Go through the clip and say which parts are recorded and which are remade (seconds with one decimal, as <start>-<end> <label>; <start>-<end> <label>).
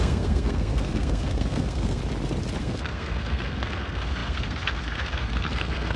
0.0-2.0 remade; 2.0-2.6 recorded; 2.6-6.0 remade